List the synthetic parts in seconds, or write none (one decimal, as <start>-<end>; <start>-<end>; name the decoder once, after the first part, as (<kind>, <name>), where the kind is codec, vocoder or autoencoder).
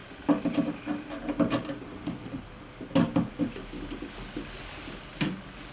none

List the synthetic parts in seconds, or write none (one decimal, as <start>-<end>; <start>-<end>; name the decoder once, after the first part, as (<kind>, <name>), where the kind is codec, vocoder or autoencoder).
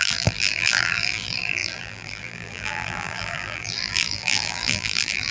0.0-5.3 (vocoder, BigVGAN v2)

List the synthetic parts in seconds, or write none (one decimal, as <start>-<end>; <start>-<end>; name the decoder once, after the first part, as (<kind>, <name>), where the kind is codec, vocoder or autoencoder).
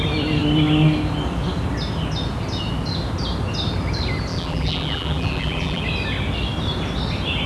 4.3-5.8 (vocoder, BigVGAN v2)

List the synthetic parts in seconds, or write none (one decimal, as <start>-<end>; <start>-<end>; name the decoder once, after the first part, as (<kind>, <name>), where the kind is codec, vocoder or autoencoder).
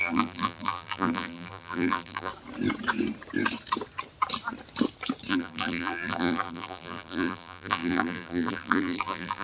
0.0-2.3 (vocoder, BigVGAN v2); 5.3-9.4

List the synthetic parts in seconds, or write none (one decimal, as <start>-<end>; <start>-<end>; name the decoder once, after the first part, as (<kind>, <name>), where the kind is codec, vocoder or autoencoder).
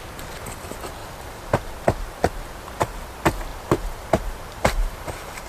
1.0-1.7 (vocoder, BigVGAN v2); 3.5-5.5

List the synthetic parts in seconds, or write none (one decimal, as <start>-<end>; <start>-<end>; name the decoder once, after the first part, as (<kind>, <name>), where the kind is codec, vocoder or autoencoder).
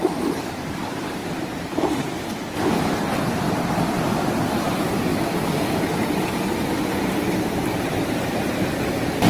0.0-5.1 (vocoder, BigVGAN v2); 7.8-9.3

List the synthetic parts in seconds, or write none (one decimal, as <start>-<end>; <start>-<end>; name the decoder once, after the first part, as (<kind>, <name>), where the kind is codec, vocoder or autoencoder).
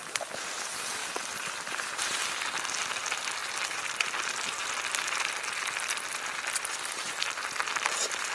0.0-8.3 (vocoder, BigVGAN v2)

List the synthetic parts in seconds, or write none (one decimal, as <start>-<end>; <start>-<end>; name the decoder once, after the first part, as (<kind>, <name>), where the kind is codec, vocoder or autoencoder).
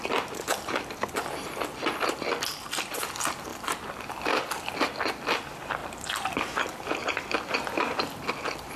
none